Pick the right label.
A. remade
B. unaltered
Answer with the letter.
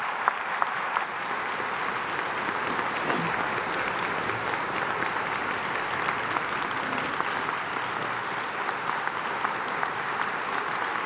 B